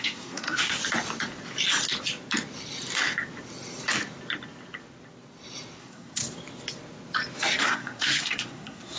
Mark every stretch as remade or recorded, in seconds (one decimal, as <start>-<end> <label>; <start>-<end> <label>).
0.0-0.8 remade; 0.8-5.8 recorded; 5.8-6.2 remade; 6.2-7.6 recorded; 7.6-9.0 remade